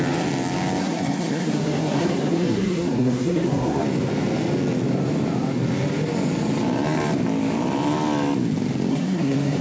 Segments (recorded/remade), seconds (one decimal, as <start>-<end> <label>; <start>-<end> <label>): 0.0-0.8 recorded; 0.8-3.8 remade; 3.8-8.9 recorded; 8.9-9.6 remade